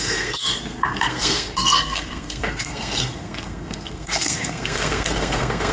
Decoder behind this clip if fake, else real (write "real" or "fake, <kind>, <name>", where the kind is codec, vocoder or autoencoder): fake, codec, SNAC